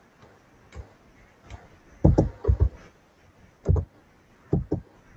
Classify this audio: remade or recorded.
recorded